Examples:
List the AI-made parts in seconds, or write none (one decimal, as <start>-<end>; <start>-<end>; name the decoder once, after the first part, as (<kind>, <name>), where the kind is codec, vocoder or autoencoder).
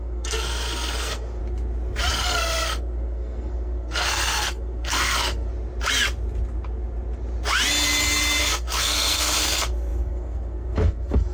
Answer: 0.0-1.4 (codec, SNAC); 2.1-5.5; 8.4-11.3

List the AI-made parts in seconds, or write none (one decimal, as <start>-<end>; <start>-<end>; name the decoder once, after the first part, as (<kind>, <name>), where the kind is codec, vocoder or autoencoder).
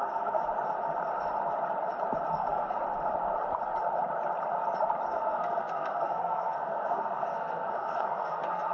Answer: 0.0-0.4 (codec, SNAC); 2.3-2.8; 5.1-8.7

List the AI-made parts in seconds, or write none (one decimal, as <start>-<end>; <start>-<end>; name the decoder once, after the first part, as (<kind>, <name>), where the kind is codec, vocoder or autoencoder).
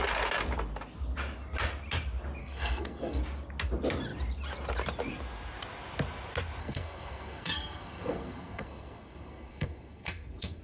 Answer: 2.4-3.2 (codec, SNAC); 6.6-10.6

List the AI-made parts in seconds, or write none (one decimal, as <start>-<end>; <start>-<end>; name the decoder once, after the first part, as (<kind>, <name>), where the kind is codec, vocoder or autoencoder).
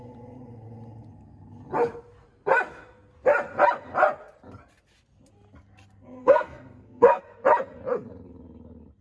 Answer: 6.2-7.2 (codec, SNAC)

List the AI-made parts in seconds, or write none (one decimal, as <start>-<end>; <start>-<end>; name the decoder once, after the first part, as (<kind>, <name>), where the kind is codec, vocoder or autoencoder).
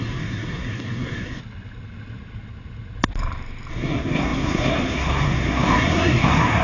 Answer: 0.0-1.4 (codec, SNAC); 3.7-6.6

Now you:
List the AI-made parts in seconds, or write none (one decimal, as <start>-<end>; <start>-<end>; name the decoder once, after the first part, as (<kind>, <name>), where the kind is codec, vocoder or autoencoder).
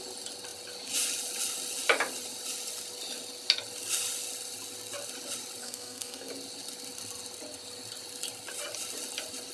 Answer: 5.6-6.3 (codec, SNAC)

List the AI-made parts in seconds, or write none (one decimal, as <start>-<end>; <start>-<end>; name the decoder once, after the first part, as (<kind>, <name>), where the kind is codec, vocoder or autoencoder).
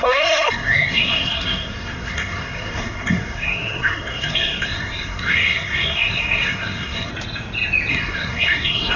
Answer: 0.0-7.1 (codec, SNAC); 7.9-9.0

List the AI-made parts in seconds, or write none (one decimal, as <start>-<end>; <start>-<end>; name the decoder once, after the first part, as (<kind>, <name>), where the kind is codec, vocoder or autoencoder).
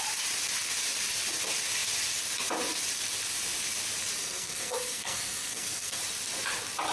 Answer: 4.2-6.0 (codec, SNAC)